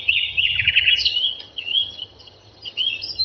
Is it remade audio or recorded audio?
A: remade